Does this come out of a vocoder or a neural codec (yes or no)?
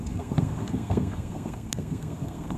yes